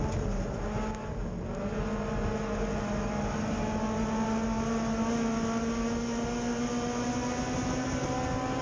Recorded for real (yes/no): yes